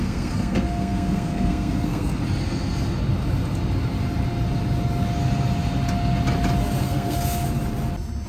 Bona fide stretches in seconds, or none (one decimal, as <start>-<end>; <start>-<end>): 2.2-6.8; 7.4-8.3